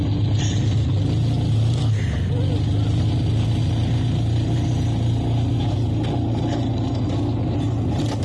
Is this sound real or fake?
real